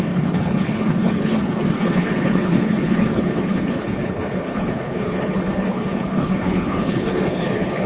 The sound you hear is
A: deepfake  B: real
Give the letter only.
A